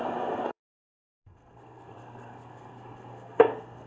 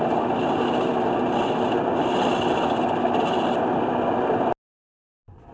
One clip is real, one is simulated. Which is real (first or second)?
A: second